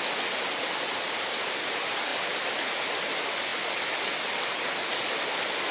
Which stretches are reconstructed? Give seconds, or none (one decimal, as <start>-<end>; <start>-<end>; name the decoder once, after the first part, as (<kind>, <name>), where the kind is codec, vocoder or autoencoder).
none